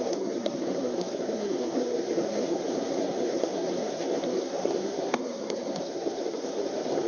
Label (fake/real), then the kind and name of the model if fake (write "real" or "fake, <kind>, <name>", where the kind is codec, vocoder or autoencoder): fake, codec, SNAC